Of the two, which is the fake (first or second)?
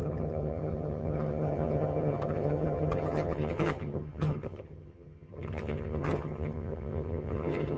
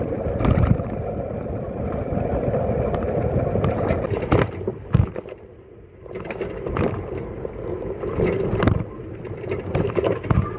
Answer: first